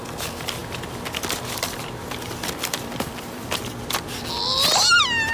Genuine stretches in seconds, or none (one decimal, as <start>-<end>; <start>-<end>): 0.0-0.6; 3.8-5.3